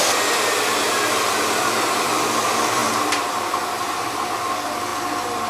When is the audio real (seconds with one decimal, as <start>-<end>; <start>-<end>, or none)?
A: 4.9-5.5